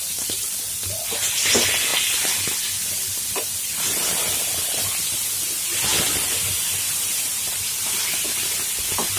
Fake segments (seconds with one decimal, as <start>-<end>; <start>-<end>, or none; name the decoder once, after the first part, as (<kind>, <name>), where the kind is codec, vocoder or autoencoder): none